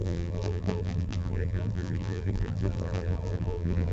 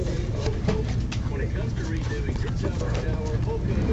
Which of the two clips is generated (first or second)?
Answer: first